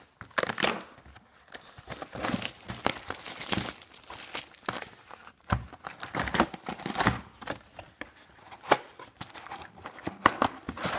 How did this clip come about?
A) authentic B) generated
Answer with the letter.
A